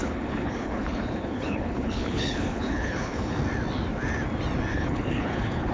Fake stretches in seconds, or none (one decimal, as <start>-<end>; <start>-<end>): 0.0-3.4; 4.7-5.7